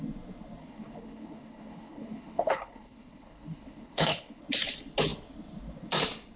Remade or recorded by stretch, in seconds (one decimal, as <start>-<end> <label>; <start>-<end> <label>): 0.0-0.6 recorded; 0.6-4.4 remade; 4.4-6.4 recorded